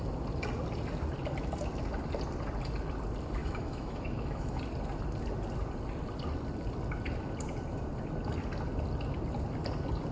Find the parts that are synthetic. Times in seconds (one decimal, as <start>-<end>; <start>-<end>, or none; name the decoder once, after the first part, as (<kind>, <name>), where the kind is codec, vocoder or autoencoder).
3.4-4.6 (autoencoder, DAC-VAE)